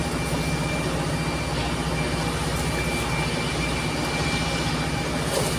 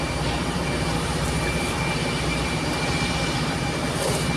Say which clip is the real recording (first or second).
first